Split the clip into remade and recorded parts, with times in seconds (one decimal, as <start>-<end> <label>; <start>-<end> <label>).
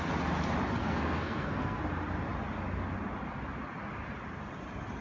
0.0-0.8 recorded; 0.8-1.8 remade; 1.8-5.0 recorded